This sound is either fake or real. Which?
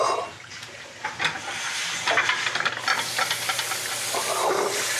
real